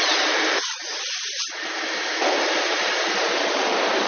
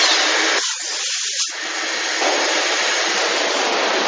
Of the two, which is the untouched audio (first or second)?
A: second